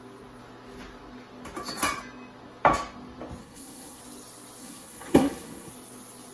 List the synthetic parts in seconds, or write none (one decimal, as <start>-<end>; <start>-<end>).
3.4-4.0; 4.6-5.7